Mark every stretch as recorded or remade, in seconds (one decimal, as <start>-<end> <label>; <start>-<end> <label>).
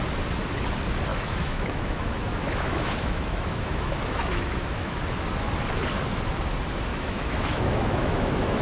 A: 0.0-1.1 recorded; 1.1-5.0 remade; 5.0-6.9 recorded; 6.9-8.6 remade